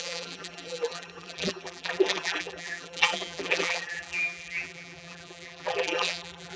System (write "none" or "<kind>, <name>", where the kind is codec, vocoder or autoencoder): vocoder, BigVGAN v2